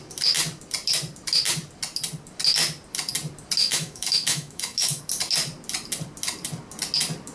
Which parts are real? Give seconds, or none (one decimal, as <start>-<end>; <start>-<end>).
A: 0.0-3.6; 5.0-7.3